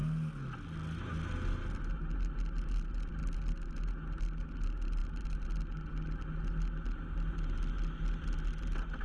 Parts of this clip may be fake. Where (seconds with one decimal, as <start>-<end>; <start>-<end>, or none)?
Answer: none